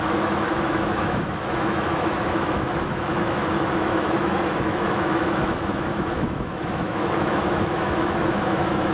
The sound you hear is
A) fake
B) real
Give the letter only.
A